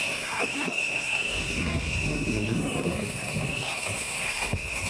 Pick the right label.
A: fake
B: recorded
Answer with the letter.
A